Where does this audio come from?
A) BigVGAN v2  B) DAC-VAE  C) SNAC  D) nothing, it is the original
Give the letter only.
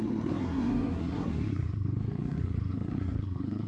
C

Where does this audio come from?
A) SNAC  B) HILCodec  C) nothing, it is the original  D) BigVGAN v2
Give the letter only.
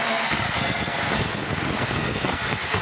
A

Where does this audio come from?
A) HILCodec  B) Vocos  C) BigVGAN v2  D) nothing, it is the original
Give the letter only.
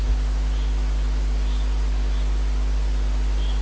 D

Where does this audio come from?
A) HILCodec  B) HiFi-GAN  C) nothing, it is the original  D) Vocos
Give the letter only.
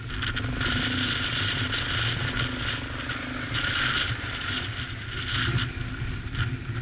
C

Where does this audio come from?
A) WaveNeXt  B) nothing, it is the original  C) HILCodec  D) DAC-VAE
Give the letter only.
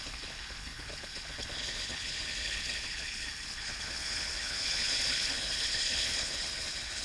C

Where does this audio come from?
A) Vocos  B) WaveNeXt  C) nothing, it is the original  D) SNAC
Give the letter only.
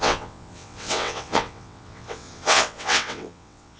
B